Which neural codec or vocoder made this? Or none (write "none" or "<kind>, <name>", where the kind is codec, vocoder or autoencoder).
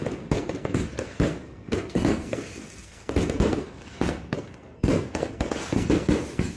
codec, SNAC